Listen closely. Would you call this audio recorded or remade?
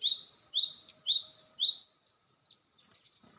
recorded